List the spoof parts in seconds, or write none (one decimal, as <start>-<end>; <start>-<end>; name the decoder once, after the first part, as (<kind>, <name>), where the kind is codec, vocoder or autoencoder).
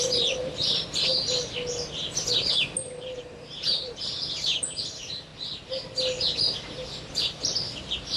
0.0-1.1 (vocoder, BigVGAN v2); 3.3-5.3; 7.1-8.2